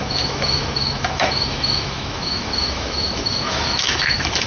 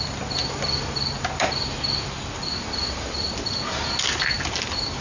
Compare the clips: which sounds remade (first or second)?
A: first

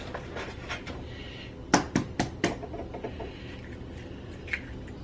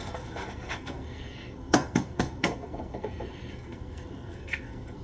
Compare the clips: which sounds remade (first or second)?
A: second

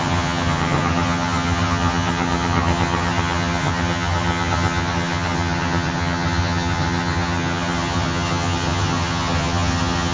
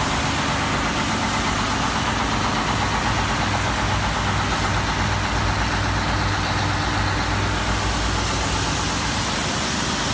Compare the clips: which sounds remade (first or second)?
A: first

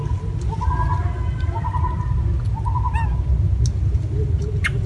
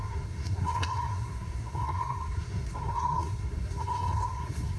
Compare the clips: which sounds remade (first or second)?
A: second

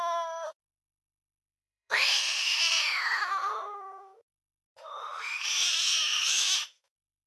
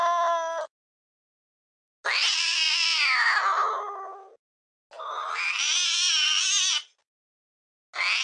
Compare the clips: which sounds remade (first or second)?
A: first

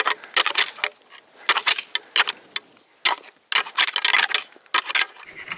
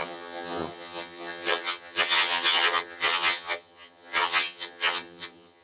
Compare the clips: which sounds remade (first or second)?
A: second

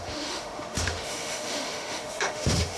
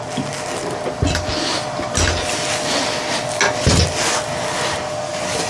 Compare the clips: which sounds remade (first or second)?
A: first